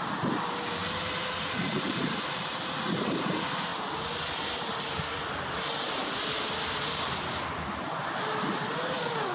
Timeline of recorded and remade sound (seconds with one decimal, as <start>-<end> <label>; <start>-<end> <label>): 0.0-9.3 recorded

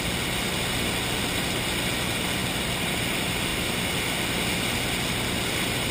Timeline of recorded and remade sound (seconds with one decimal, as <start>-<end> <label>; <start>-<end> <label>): 0.0-2.4 recorded; 2.4-3.0 remade; 3.0-5.9 recorded